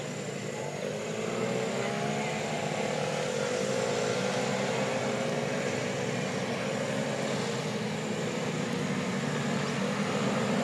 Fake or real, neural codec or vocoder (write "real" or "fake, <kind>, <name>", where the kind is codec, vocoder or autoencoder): real